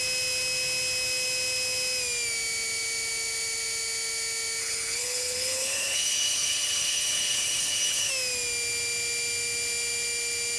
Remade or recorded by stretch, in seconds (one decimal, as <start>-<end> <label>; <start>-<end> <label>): 0.0-4.6 recorded; 4.6-8.1 remade; 8.1-10.6 recorded